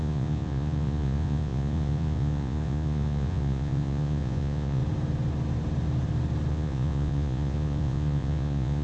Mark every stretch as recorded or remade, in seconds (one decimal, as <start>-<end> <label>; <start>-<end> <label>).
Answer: 0.0-4.8 remade; 4.8-6.5 recorded; 6.5-8.8 remade